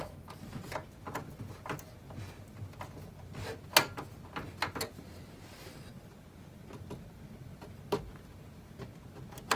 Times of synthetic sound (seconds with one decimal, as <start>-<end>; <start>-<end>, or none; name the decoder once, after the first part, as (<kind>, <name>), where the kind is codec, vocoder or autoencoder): none